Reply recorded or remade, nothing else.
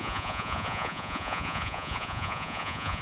remade